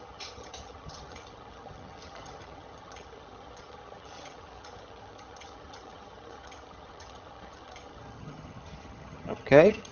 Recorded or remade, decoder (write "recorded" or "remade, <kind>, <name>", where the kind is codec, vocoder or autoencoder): remade, vocoder, HiFi-GAN